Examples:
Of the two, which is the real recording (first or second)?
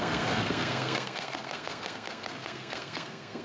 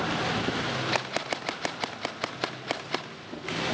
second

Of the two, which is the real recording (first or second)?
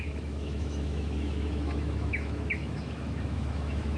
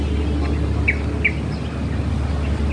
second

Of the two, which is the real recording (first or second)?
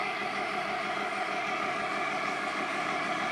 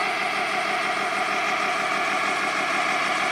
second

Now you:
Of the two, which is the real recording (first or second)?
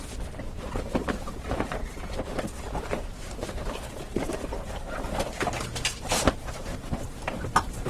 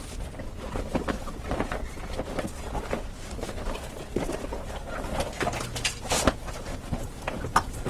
second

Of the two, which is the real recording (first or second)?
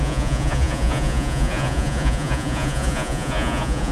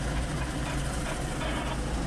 second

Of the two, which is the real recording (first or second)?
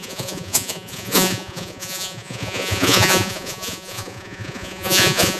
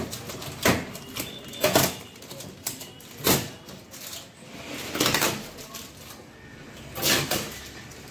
second